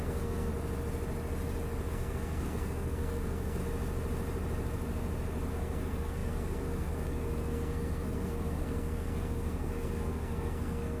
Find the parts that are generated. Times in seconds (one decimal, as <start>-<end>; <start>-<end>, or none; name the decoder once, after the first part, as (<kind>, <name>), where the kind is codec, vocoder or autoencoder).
0.0-0.5 (codec, SNAC); 1.9-3.6; 5.5-11.0